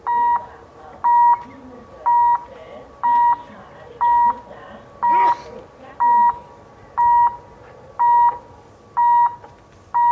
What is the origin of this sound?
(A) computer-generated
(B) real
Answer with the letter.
B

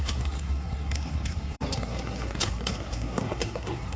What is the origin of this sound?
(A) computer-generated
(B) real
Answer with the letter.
A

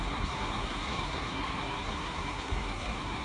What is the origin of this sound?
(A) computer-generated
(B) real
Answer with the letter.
A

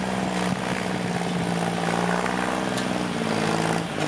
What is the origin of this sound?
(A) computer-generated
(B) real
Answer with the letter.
B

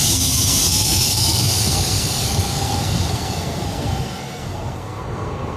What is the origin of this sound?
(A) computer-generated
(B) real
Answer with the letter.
A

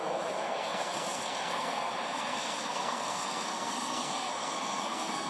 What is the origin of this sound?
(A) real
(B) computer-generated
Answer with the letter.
B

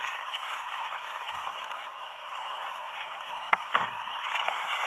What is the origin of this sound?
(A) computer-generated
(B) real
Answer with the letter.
A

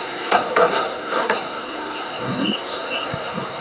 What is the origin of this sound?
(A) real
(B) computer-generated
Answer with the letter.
B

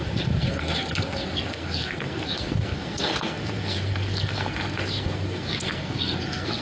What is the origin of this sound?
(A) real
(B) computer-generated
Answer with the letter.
B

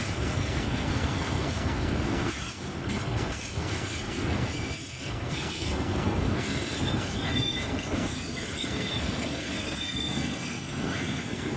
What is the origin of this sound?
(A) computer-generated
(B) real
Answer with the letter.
A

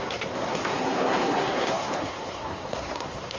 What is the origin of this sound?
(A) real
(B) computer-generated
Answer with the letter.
B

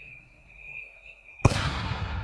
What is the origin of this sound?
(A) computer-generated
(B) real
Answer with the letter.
A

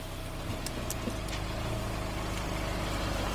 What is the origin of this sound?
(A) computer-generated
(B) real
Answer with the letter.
B